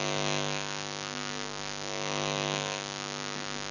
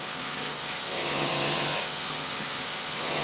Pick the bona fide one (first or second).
first